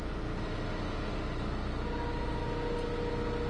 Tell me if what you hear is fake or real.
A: real